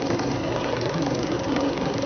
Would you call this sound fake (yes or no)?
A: yes